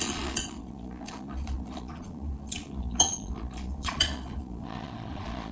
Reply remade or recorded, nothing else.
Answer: remade